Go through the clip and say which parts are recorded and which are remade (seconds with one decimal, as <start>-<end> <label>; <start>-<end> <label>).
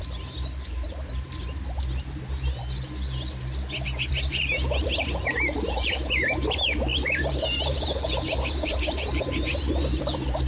0.0-2.6 remade; 2.6-4.1 recorded; 4.1-10.5 remade